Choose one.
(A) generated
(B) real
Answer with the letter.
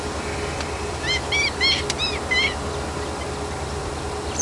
B